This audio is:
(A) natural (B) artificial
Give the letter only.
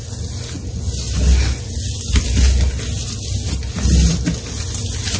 A